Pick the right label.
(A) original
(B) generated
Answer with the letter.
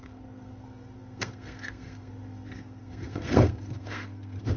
B